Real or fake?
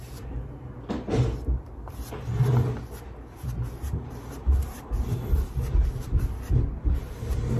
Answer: real